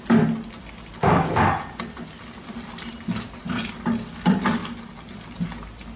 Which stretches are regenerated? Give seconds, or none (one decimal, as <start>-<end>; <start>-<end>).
none